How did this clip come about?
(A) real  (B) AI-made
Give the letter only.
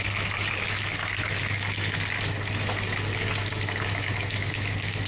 B